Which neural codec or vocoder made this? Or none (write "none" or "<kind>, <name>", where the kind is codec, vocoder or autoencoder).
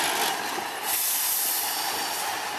none